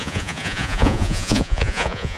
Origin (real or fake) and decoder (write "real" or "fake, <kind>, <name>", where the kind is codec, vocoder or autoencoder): fake, vocoder, Vocos